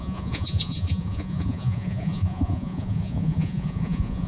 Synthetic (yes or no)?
yes